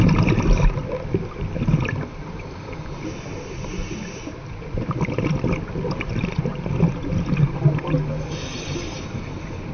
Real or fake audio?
real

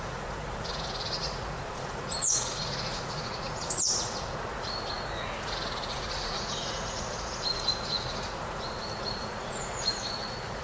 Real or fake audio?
fake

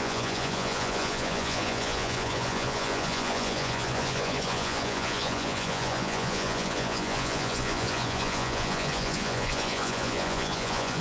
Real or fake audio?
fake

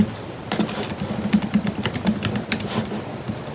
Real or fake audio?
real